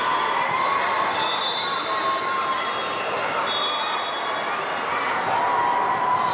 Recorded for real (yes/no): yes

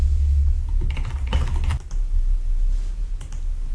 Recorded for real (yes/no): yes